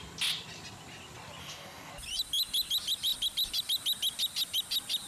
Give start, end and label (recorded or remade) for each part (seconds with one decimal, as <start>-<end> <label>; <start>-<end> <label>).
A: 0.0-1.4 recorded; 1.4-1.9 remade; 1.9-5.1 recorded